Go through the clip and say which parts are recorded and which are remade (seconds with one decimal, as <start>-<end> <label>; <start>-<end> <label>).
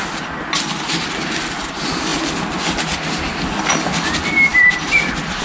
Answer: 0.0-5.4 recorded